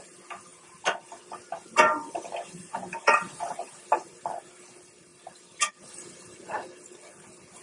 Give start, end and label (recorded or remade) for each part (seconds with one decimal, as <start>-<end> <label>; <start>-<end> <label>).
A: 0.0-0.5 recorded; 0.5-3.8 remade; 3.8-5.1 recorded; 5.1-5.7 remade; 5.7-7.6 recorded